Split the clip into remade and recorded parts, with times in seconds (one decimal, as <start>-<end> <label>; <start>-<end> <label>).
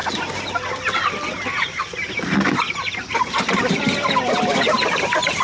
0.0-5.4 recorded